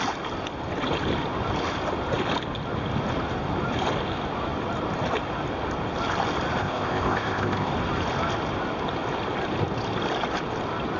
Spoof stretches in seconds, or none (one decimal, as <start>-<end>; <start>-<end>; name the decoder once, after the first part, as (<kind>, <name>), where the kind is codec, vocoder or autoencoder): 6.6-7.7 (codec, ZipCodec)